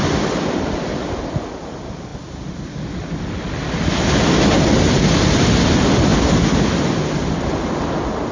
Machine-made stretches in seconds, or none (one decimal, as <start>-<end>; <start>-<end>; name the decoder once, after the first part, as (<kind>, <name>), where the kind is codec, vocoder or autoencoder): none